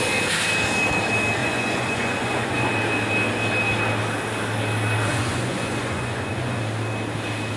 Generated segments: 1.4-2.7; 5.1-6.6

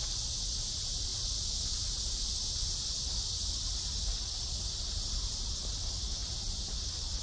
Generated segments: none